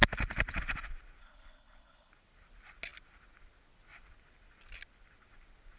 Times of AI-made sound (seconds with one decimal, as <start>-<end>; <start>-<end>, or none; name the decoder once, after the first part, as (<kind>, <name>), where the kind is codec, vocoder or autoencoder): 1.2-2.1 (codec, HILCodec)